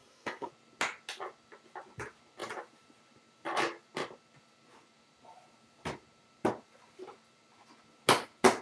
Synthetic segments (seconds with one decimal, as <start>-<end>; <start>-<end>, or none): 0.0-0.5